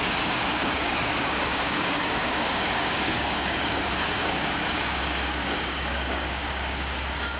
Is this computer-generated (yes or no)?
yes